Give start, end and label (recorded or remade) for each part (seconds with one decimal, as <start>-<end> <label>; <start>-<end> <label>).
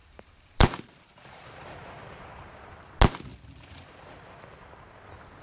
0.0-2.9 remade; 2.9-3.3 recorded; 3.3-3.9 remade; 3.9-5.4 recorded